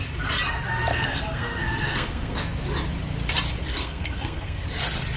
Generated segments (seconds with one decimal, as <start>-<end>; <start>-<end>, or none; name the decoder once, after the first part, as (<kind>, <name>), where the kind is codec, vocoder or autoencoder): 0.9-2.4 (codec, SNAC); 3.7-4.6

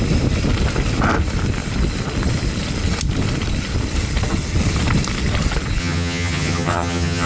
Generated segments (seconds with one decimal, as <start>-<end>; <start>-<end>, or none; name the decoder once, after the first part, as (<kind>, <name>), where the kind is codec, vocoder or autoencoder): 5.8-7.3 (vocoder, HiFi-GAN)

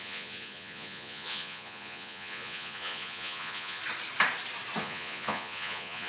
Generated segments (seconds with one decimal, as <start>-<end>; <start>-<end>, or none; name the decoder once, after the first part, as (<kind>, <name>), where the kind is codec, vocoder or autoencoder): 0.0-3.8 (vocoder, Vocos); 4.8-6.1

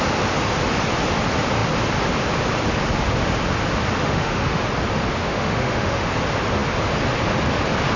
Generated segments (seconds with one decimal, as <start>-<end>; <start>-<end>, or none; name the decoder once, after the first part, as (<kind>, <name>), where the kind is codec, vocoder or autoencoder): 4.0-4.6 (autoencoder, DAC-VAE); 5.2-6.1

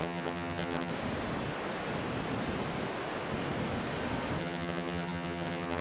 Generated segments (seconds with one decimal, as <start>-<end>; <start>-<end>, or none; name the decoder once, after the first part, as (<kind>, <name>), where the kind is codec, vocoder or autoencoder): 0.0-0.9 (vocoder, HiFi-GAN); 4.4-5.8

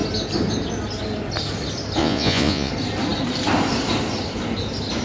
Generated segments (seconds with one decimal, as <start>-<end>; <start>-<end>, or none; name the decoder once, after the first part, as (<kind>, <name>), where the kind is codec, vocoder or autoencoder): 2.0-2.7 (vocoder, Vocos)

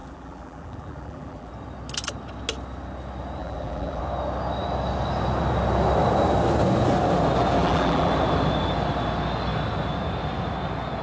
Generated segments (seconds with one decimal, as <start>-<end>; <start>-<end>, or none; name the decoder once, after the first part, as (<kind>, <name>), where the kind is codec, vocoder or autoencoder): 0.0-1.5 (vocoder, BigVGAN v2); 3.4-4.0; 7.6-8.1

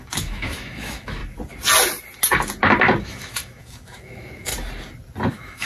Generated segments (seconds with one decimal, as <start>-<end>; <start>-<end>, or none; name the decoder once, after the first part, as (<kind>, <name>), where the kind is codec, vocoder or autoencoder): 0.0-1.2 (autoencoder, DAC-VAE); 3.0-4.5; 5.3-5.7